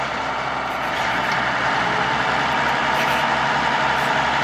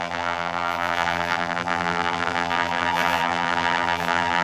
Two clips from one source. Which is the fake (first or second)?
second